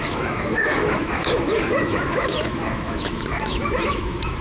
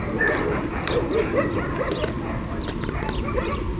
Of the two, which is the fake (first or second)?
first